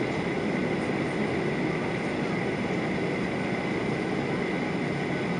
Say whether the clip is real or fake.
real